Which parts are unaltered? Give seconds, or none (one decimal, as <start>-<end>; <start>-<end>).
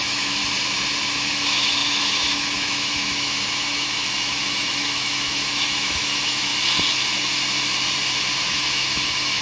0.4-1.0; 6.5-8.4